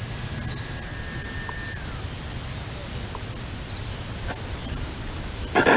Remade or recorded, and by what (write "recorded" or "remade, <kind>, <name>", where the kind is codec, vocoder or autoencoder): recorded